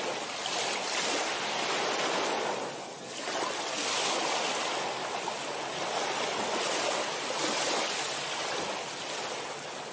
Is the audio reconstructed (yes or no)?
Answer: no